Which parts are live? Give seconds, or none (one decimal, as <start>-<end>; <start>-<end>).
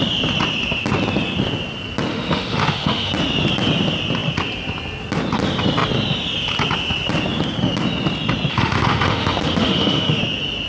0.0-2.1; 3.1-8.5; 10.2-10.7